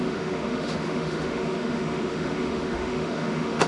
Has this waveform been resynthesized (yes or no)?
yes